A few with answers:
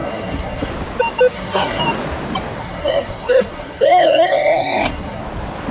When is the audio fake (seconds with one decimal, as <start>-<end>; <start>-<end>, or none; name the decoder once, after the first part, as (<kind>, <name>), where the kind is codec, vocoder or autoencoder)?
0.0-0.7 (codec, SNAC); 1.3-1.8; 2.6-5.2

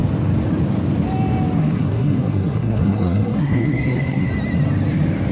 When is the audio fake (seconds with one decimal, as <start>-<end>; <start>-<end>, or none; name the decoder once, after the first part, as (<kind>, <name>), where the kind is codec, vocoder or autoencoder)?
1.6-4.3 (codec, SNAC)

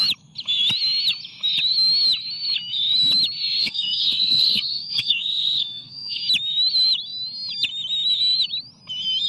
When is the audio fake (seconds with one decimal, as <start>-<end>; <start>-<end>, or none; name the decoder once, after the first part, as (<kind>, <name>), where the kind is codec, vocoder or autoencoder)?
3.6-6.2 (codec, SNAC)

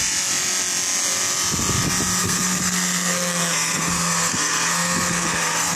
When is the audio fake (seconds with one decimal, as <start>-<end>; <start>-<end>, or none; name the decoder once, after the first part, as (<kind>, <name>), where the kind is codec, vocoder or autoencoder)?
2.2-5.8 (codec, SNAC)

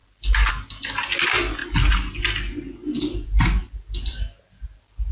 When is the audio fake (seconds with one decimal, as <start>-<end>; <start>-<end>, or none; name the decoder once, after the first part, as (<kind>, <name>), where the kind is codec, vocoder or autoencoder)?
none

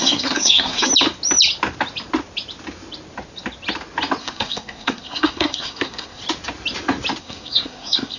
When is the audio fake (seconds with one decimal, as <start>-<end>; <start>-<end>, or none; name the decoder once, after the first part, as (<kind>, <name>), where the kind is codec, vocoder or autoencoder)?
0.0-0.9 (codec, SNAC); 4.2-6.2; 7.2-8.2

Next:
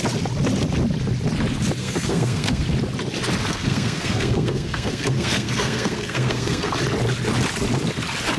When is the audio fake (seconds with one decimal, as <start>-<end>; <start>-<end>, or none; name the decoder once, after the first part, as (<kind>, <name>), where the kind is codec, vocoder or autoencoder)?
1.8-2.6 (codec, SNAC); 3.5-6.7